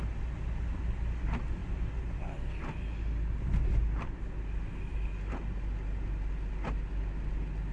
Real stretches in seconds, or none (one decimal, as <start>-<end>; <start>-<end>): 0.0-7.7